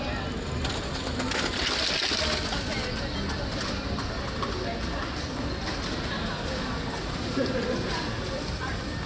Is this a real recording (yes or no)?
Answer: yes